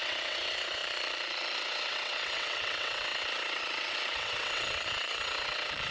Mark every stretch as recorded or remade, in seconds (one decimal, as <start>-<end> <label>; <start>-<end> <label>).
0.0-0.8 remade; 0.8-1.6 recorded; 1.6-5.9 remade